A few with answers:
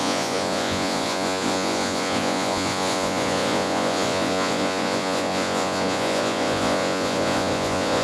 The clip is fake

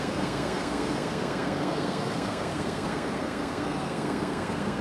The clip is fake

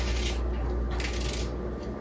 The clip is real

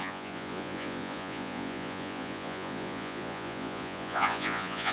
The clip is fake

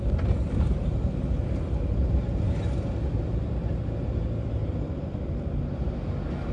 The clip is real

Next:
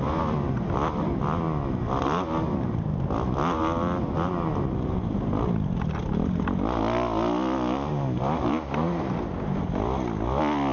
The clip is real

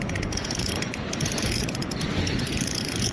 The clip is fake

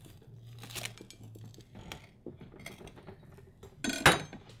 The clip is real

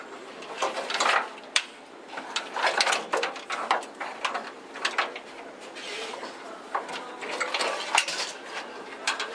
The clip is fake